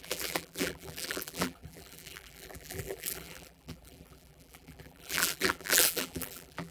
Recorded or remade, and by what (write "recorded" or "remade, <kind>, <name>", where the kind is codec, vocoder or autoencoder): remade, vocoder, BigVGAN v2